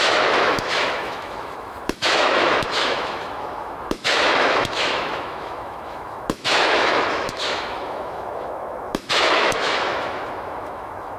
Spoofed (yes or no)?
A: yes